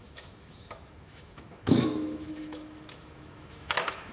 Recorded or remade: remade